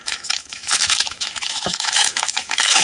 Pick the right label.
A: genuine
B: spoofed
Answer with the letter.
B